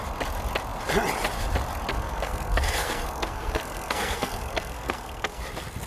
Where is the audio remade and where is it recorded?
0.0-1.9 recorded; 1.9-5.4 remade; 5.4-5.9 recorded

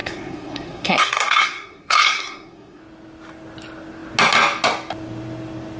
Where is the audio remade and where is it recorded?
0.0-2.8 remade; 2.8-5.8 recorded

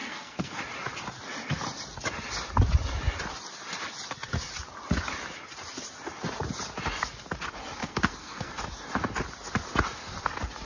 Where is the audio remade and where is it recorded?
0.0-0.6 remade; 0.6-7.8 recorded; 7.8-8.5 remade; 8.5-10.7 recorded

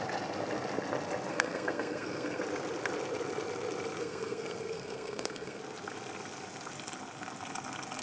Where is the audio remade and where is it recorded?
0.0-1.3 recorded; 1.3-2.4 remade; 2.4-4.0 recorded; 4.0-5.6 remade; 5.6-8.0 recorded

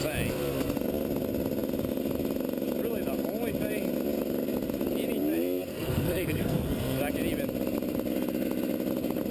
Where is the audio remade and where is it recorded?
0.0-5.7 recorded; 5.7-7.0 remade; 7.0-9.3 recorded

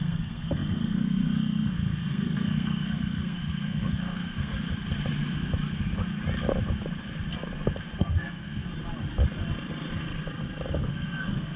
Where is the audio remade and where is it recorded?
0.0-4.5 remade; 4.5-8.0 recorded; 8.0-8.6 remade; 8.6-10.8 recorded; 10.8-11.6 remade

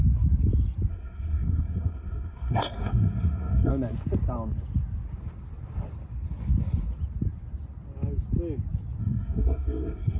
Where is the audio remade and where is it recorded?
0.0-0.9 recorded; 0.9-3.7 remade; 3.7-9.0 recorded; 9.0-10.2 remade